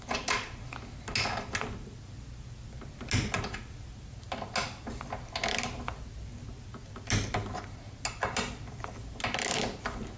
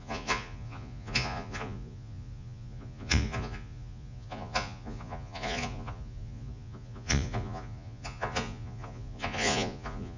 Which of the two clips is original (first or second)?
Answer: first